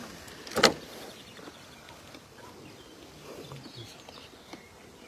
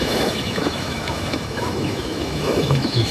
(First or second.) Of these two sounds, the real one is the first